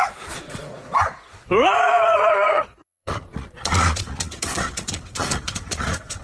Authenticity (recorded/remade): remade